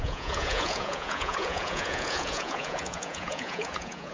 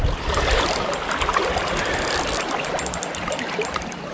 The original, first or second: second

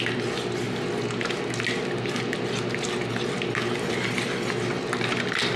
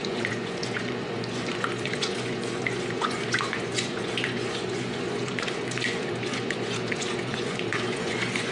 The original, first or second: first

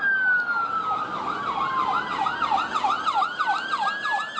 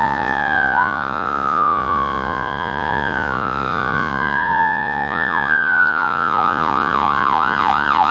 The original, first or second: first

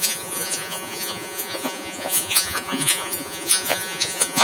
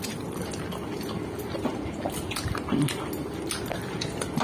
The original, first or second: second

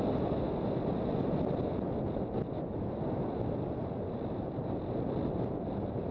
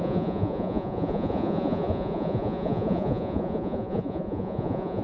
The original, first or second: first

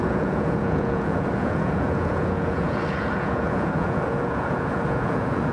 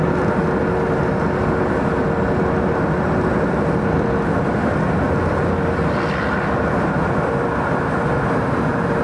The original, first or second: second